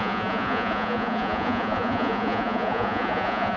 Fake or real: fake